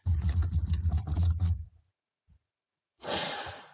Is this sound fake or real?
fake